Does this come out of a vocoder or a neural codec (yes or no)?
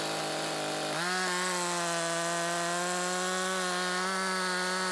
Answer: no